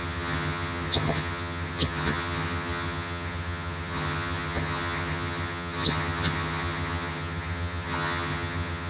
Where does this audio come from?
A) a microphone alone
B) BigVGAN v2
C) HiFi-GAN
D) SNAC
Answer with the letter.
C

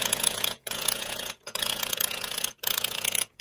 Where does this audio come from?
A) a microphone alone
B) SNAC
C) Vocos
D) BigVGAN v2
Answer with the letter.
C